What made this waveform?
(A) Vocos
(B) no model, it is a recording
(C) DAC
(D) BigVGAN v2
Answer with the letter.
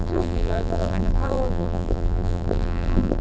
D